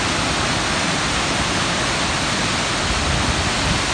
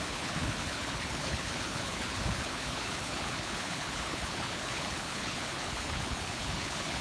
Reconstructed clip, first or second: second